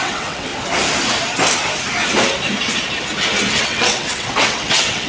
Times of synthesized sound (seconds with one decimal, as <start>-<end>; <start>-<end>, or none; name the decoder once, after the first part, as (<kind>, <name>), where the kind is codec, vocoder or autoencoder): 0.0-0.5 (vocoder, WaveNeXt); 3.6-5.1